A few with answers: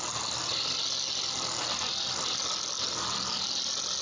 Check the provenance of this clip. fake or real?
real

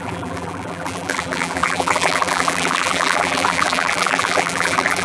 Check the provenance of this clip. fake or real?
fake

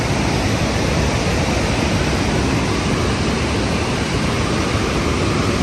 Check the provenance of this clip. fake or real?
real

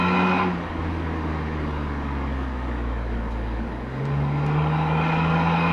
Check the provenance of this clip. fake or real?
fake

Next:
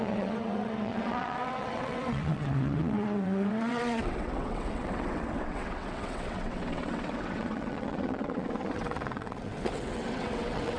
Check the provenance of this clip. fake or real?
fake